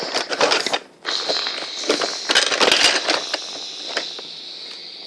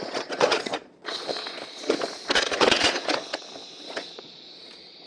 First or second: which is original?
first